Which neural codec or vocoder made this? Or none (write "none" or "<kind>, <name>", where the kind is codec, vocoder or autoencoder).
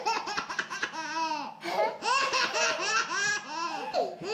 none